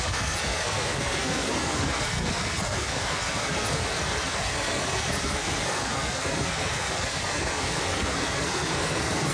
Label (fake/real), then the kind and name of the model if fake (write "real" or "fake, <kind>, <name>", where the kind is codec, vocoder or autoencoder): fake, codec, SNAC